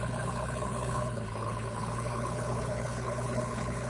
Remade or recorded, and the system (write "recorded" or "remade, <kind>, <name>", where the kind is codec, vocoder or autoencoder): remade, codec, HILCodec